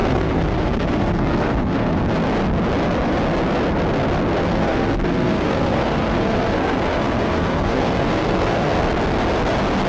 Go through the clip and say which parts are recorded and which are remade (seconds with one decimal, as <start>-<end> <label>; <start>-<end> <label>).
0.0-2.0 remade; 2.0-4.5 recorded; 4.5-8.9 remade; 8.9-9.9 recorded